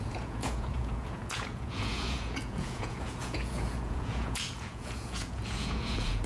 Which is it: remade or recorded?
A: remade